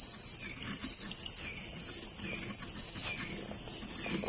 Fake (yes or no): no